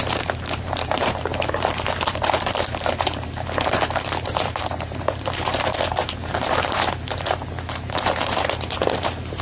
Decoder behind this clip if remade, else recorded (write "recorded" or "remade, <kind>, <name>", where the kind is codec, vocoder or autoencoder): remade, vocoder, BigVGAN v2